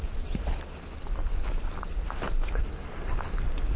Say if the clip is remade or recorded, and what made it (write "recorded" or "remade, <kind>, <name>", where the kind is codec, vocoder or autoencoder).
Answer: recorded